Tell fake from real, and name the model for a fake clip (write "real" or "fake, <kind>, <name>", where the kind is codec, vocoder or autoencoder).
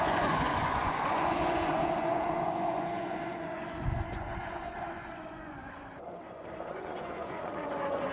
fake, vocoder, Vocos